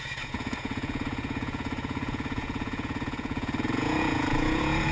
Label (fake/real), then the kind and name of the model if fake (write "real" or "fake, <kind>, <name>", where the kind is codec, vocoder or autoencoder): fake, vocoder, Vocos